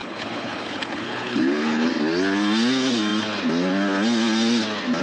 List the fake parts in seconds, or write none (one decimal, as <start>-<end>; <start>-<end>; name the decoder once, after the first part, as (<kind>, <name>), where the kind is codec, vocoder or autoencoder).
0.0-1.9 (codec, HILCodec)